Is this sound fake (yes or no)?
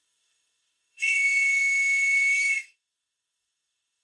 yes